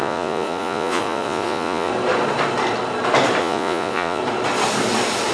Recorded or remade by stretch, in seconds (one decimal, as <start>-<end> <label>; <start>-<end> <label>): 0.0-1.9 remade; 1.9-3.4 recorded; 3.4-4.2 remade; 4.2-5.3 recorded